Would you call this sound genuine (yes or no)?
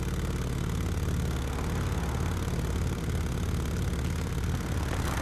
yes